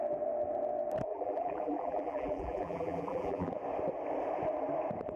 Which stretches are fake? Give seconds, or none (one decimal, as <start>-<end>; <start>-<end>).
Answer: 1.1-3.5